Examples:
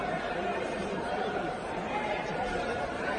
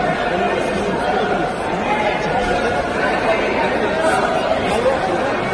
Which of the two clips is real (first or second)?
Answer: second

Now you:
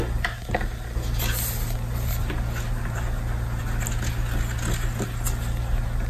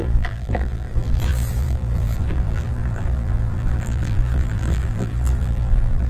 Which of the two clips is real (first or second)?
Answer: first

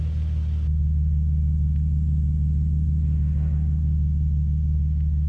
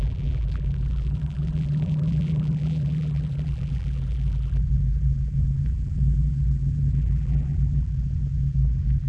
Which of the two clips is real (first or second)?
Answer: first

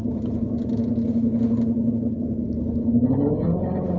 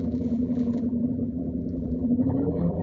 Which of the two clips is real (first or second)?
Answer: first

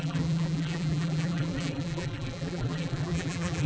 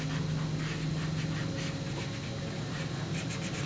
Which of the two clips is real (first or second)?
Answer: second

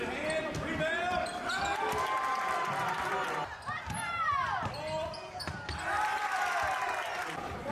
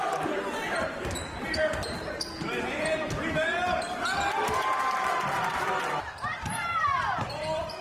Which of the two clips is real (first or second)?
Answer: first